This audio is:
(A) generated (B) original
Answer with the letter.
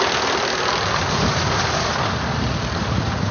B